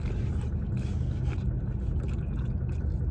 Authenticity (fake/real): real